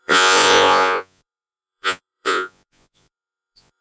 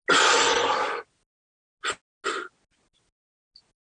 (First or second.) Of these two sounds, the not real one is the first